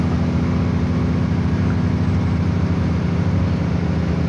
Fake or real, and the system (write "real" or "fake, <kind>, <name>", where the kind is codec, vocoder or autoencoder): real